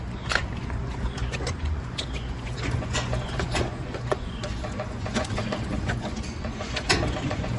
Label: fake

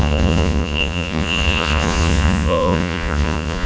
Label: fake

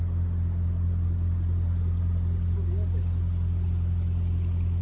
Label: real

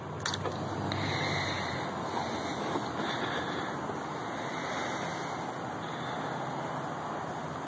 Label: real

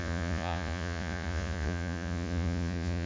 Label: fake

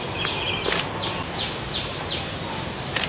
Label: real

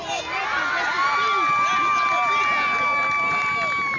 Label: real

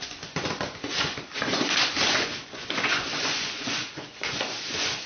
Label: fake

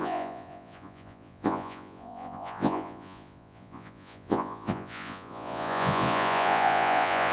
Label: fake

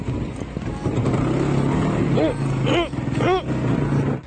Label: real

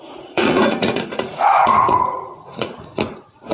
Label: fake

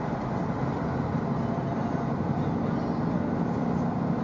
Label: real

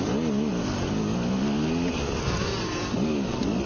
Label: real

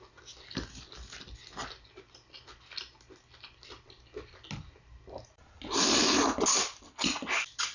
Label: real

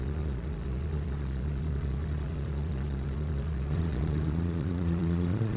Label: fake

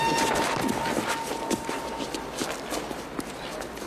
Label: real